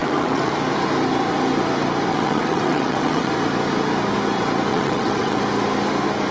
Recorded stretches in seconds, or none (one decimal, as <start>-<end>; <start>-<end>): 0.5-2.1; 3.3-4.7; 5.4-6.3